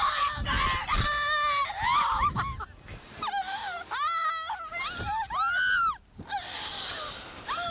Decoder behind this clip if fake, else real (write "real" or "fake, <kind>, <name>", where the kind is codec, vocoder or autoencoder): real